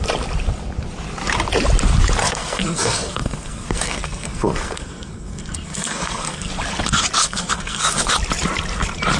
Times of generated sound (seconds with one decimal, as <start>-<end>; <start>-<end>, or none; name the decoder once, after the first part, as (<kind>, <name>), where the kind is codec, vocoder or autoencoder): 2.2-6.5 (codec, SNAC); 7.2-8.1

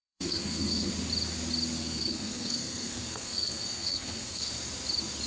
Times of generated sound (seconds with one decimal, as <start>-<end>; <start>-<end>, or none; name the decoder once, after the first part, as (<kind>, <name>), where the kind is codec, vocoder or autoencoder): 0.0-0.9 (codec, SNAC); 1.8-4.5

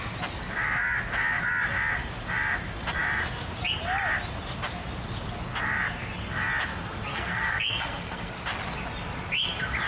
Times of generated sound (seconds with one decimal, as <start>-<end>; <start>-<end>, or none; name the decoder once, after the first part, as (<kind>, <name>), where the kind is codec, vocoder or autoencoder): 7.1-8.3 (codec, SNAC)

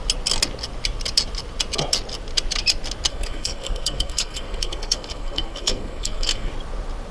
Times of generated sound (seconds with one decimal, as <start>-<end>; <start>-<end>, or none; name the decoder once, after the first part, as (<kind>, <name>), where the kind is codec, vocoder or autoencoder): 3.1-6.5 (codec, SNAC)

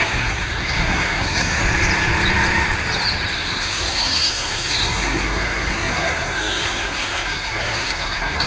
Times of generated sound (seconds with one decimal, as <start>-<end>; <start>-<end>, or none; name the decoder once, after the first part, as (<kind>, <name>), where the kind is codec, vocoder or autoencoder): 0.0-1.6 (codec, SNAC); 3.3-8.5

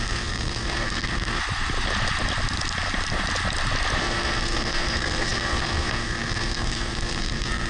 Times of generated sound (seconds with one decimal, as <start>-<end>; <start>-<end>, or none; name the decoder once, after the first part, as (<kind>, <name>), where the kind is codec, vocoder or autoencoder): 0.0-1.4 (codec, SNAC); 4.0-7.7

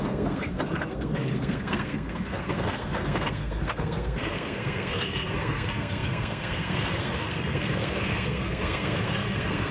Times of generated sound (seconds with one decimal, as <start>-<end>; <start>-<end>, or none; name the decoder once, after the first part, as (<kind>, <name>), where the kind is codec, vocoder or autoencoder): 0.0-9.7 (codec, SNAC)

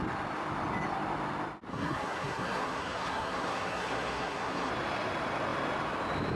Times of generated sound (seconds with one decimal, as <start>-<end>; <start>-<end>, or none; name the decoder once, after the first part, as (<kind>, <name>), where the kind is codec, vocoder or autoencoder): 1.7-4.7 (codec, SNAC)